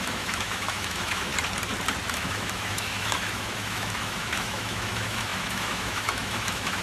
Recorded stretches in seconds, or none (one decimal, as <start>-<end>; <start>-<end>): 1.3-2.1